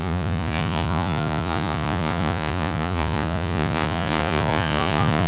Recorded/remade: remade